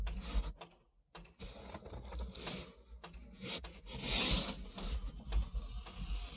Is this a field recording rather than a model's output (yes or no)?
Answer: yes